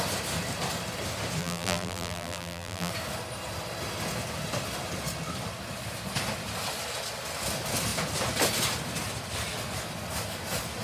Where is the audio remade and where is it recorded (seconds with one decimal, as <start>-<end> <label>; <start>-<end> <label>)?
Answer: 0.0-1.4 recorded; 1.4-2.9 remade; 2.9-10.8 recorded